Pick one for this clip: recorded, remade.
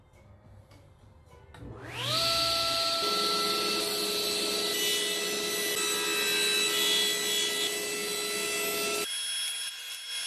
recorded